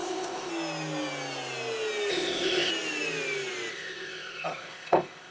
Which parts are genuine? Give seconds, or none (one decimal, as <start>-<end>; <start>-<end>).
0.5-2.1; 2.7-3.7